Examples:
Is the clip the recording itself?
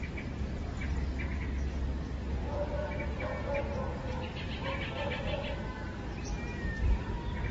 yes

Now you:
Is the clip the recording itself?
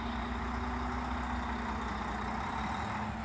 yes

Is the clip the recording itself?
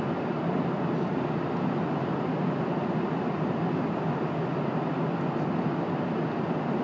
yes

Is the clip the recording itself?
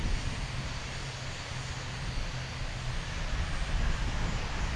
yes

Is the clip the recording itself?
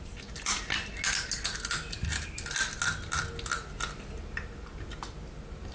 yes